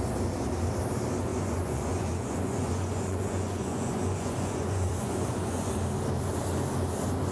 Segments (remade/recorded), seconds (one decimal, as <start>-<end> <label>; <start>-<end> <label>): 0.0-1.3 recorded; 1.3-5.7 remade; 5.7-7.3 recorded